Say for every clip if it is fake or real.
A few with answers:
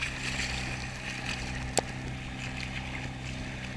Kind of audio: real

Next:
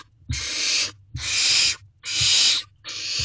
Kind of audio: real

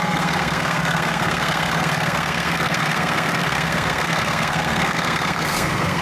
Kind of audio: fake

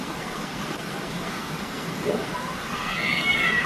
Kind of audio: fake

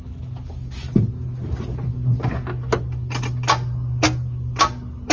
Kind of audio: real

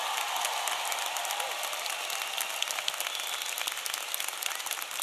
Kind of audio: real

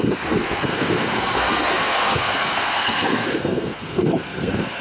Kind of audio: fake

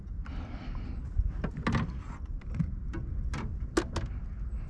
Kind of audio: real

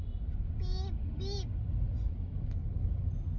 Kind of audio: real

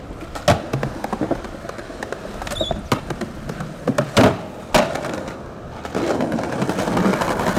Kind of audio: real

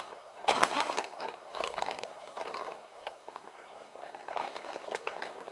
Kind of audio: fake